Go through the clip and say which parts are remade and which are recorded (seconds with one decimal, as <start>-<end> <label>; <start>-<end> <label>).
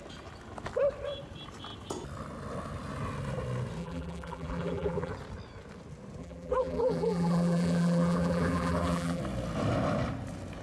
0.0-3.8 recorded; 3.8-5.1 remade; 5.1-6.2 recorded; 6.2-9.2 remade; 9.2-10.6 recorded